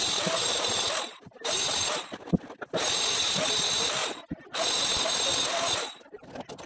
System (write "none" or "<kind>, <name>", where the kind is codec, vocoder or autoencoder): none